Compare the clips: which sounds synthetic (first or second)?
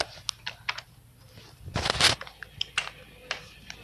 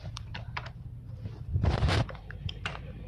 second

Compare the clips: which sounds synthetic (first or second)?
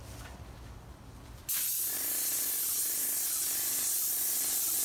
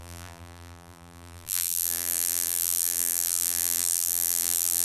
second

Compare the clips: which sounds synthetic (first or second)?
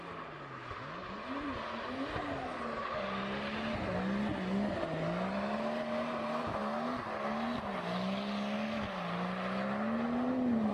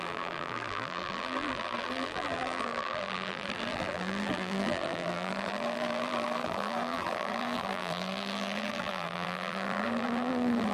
second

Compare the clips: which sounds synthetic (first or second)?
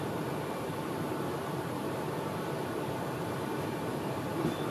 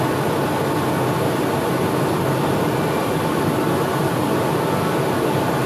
first